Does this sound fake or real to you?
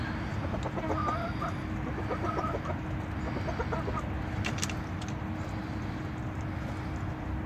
real